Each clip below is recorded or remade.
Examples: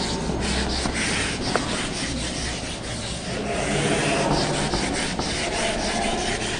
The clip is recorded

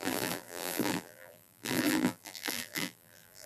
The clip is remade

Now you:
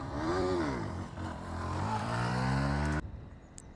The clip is remade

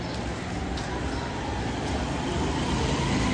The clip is recorded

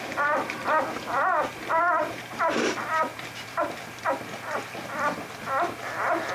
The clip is remade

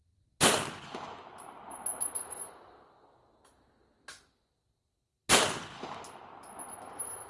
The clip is recorded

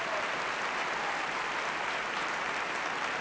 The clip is recorded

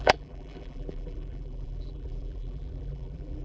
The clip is remade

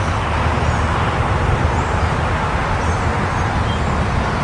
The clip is recorded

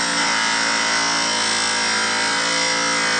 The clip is recorded